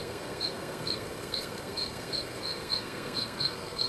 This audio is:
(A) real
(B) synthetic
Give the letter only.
B